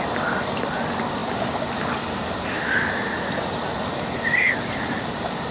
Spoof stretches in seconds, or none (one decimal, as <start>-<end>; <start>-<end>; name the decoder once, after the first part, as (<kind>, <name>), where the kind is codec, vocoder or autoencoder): none